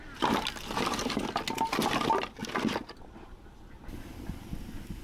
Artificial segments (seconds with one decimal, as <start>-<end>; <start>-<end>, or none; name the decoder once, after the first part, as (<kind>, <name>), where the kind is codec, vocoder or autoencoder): none